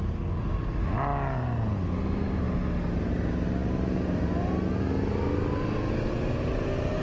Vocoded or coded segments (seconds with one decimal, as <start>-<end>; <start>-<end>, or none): none